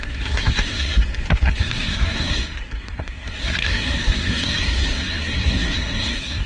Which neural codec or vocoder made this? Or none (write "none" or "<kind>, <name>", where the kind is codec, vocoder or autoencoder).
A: codec, SNAC